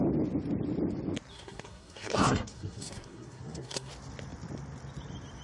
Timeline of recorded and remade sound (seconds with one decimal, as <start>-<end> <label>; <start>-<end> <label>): 0.0-1.3 recorded; 1.3-3.9 remade; 3.9-5.4 recorded